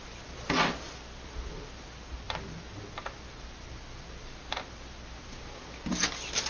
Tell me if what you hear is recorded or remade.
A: recorded